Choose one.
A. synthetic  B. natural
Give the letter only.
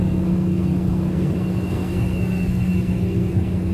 A